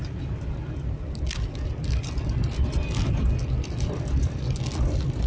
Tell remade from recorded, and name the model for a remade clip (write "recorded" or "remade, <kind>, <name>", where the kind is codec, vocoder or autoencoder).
recorded